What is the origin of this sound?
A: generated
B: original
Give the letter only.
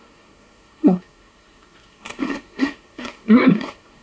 A